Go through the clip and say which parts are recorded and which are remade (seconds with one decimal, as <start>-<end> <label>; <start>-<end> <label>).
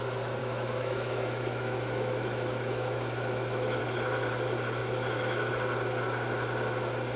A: 0.0-0.4 recorded; 0.4-3.8 remade; 3.8-4.8 recorded; 4.8-5.5 remade; 5.5-7.2 recorded